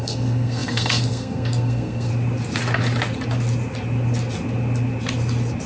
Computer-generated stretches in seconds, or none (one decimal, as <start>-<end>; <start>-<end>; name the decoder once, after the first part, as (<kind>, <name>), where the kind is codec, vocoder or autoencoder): 0.0-2.1 (codec, SNAC)